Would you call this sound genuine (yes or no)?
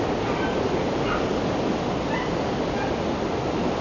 yes